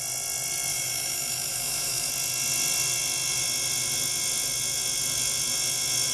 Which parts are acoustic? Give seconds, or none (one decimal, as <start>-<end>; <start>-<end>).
0.0-0.7; 2.1-6.1